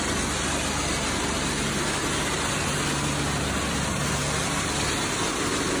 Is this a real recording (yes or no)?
yes